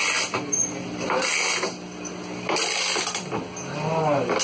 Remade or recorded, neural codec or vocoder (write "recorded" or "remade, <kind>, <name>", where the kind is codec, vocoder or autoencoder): recorded